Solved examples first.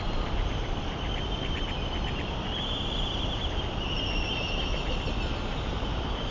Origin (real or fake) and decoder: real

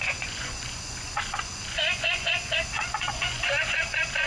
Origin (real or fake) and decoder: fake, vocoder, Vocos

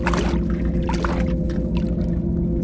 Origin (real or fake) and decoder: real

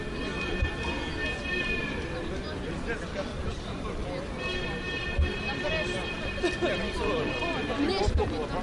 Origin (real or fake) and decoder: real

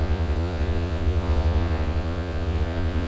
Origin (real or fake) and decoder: fake, vocoder, Vocos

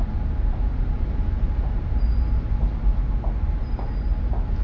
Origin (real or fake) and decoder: real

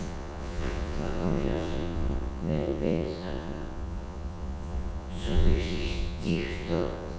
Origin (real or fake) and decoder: fake, vocoder, Vocos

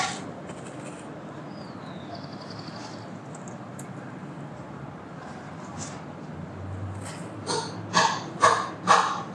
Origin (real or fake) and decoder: real